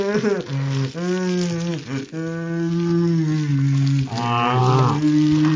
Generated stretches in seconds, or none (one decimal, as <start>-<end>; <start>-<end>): none